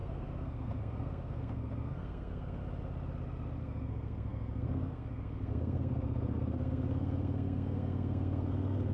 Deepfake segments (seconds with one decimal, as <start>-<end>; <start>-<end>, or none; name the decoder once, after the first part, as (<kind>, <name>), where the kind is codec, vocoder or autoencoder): 0.0-2.6 (codec, SNAC); 3.6-8.9